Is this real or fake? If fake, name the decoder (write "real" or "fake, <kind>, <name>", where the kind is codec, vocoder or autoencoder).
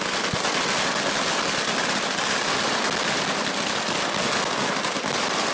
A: real